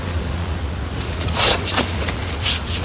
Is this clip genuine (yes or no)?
no